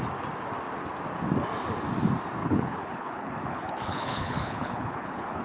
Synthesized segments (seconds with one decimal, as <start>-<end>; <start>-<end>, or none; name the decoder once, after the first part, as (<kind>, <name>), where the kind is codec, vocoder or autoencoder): 2.4-5.4 (codec, HILCodec)